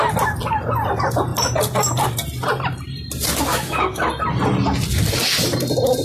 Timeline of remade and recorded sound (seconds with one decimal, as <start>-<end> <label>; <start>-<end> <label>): 0.0-3.5 recorded; 3.5-4.0 remade; 4.0-6.0 recorded